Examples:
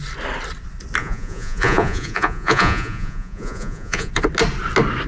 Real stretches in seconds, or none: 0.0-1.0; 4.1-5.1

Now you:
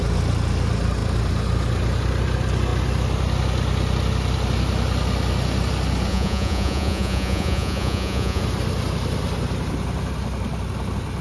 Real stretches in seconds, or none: 0.0-6.1; 8.4-11.2

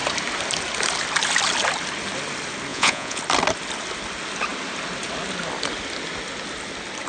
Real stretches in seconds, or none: 0.0-2.7; 3.2-7.1

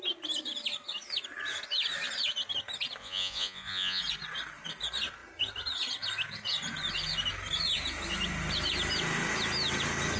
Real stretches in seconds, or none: 0.0-3.0; 4.0-10.2

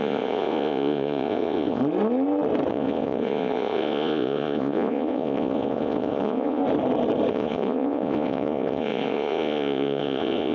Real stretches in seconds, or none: 1.8-2.7; 6.6-7.3

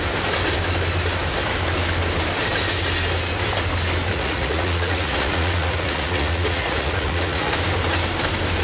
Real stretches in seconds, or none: 0.0-4.1; 7.5-8.6